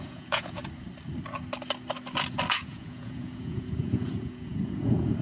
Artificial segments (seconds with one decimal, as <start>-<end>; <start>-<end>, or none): 0.0-0.6; 2.5-5.2